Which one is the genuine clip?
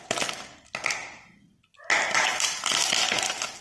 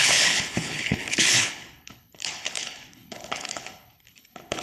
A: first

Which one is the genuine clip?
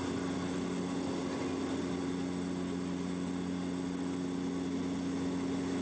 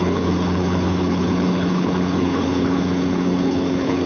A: first